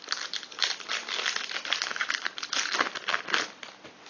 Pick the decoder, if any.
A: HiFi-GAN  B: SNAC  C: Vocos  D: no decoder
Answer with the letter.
D